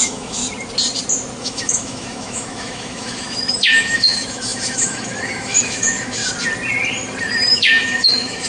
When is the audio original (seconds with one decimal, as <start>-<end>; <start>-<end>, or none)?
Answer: 0.4-1.4; 6.2-7.5